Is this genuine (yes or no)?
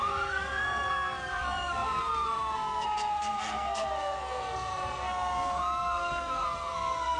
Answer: no